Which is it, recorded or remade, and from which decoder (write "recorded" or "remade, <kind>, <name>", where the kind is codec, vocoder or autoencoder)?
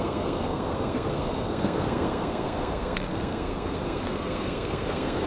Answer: remade, codec, SNAC